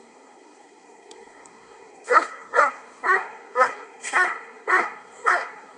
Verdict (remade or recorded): remade